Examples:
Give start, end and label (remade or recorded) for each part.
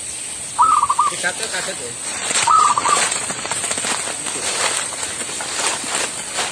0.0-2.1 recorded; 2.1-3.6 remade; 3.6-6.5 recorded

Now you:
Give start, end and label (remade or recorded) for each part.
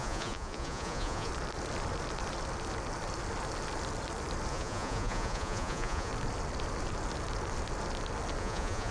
0.0-1.3 remade; 1.3-4.5 recorded; 4.5-6.1 remade; 6.1-8.4 recorded; 8.4-8.9 remade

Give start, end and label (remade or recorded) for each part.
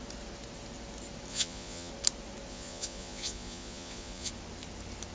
0.0-1.3 recorded; 1.3-1.9 remade; 1.9-2.5 recorded; 2.5-4.3 remade; 4.3-5.1 recorded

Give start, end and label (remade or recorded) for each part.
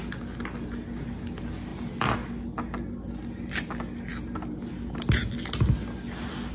0.0-6.5 recorded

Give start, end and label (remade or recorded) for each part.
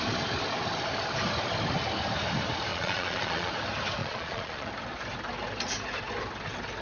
0.0-2.7 recorded; 2.7-3.5 remade; 3.5-4.0 recorded; 4.0-4.7 remade; 4.7-6.8 recorded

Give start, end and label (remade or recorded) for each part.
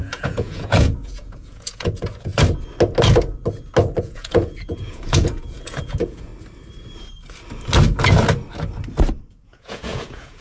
0.0-2.3 remade; 2.3-4.0 recorded; 4.0-6.3 remade; 6.3-9.3 recorded; 9.3-10.4 remade